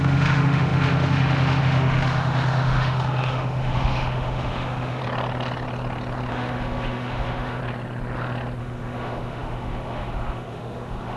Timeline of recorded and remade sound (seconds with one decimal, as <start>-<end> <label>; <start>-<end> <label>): 0.0-5.0 remade; 5.0-6.3 recorded; 6.3-7.6 remade; 7.6-8.6 recorded; 8.6-11.2 remade